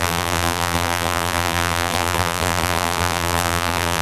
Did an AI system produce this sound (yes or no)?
yes